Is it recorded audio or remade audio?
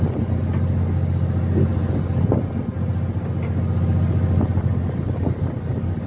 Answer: recorded